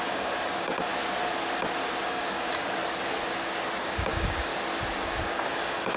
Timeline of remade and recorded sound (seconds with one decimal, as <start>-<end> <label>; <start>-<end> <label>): 0.0-0.9 remade; 0.9-2.1 recorded; 2.1-2.8 remade; 2.8-3.8 recorded; 3.8-4.5 remade; 4.5-5.2 recorded; 5.2-6.0 remade